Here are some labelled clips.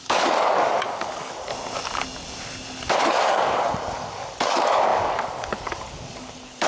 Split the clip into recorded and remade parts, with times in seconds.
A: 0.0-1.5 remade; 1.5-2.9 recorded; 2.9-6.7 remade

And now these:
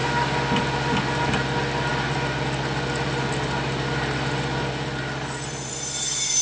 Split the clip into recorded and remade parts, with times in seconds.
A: 0.0-6.4 recorded

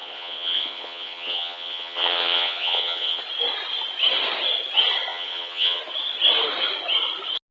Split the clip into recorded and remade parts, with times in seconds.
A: 0.0-3.2 remade; 3.2-5.1 recorded; 5.1-5.8 remade; 5.8-7.5 recorded

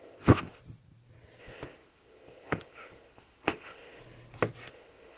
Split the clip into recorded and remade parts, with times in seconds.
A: 0.0-0.6 remade; 0.6-1.4 recorded; 1.4-4.0 remade; 4.0-4.7 recorded; 4.7-5.2 remade

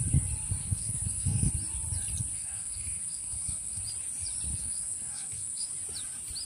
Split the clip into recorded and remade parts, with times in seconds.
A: 0.0-0.6 recorded; 0.6-1.5 remade; 1.5-2.3 recorded; 2.3-3.8 remade; 3.8-4.5 recorded; 4.5-5.7 remade; 5.7-6.5 recorded

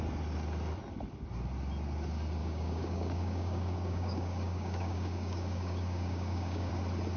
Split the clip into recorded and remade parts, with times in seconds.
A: 0.0-2.4 recorded; 2.4-6.7 remade; 6.7-7.2 recorded